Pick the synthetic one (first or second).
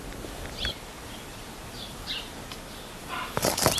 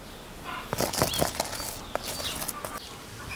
first